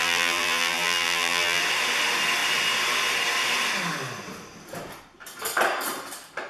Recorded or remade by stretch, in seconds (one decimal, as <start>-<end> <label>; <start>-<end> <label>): 0.0-1.6 remade; 1.6-6.5 recorded